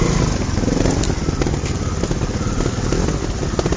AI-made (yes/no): no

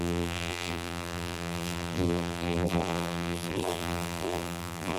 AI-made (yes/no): yes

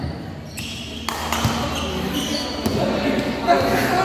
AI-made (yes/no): no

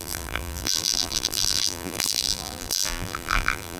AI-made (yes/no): yes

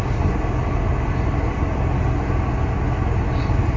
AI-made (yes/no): no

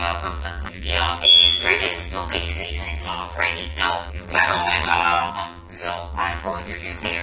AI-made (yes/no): yes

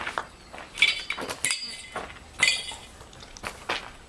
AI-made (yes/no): no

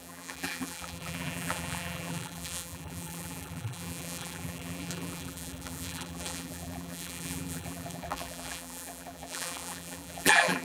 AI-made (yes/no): yes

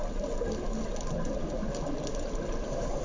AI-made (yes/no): no